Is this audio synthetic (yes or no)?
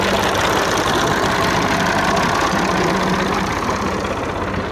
no